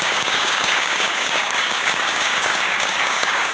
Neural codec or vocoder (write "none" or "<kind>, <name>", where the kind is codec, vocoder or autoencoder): codec, DAC